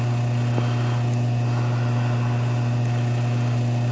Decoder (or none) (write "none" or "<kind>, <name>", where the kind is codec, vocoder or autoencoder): none